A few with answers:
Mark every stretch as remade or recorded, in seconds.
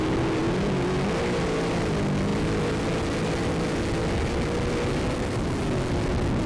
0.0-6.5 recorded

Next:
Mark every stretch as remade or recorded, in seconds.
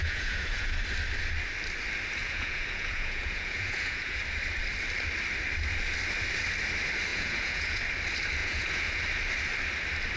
0.0-0.7 remade; 0.7-2.2 recorded; 2.2-4.2 remade; 4.2-7.1 recorded; 7.1-7.8 remade; 7.8-8.4 recorded; 8.4-9.0 remade; 9.0-10.2 recorded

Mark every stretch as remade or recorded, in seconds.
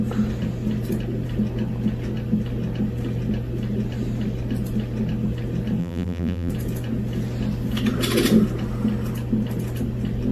0.0-5.8 recorded; 5.8-6.5 remade; 6.5-10.3 recorded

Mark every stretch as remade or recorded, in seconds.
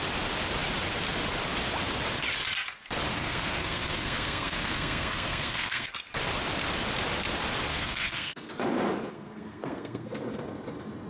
0.0-3.1 recorded; 3.1-5.9 remade; 5.9-7.7 recorded; 7.7-8.5 remade; 8.5-9.1 recorded; 9.1-10.1 remade; 10.1-11.1 recorded